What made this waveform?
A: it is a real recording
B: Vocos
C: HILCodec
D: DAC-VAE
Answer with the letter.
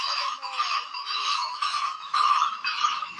D